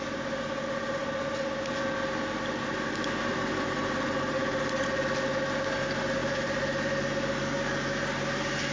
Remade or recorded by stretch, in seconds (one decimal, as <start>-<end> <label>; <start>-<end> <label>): 0.0-8.7 recorded